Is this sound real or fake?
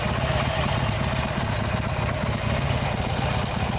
real